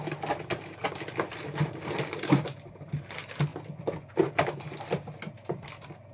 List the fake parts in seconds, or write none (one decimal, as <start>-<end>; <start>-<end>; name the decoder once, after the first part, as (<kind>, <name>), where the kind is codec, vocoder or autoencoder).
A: none